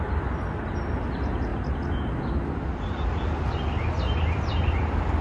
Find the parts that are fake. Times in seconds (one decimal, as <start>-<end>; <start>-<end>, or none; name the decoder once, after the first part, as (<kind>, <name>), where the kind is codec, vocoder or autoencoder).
none